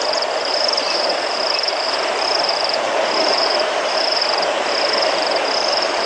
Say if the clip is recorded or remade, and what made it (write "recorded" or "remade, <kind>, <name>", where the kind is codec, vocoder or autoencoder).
remade, vocoder, BigVGAN v2